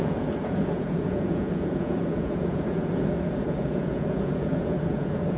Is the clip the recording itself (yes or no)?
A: no